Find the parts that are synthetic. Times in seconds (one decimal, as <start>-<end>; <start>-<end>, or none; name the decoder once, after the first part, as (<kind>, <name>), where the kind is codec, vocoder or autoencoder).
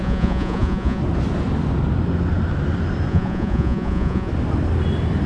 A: 0.0-1.0 (vocoder, Vocos); 3.1-4.3